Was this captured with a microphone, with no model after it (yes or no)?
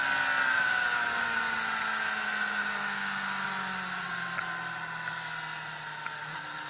yes